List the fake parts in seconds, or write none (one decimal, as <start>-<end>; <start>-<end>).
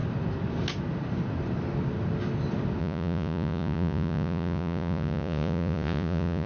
2.8-6.5